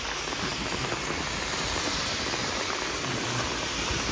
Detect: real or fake real